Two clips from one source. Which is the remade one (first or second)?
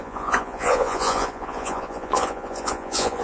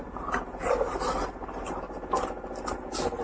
first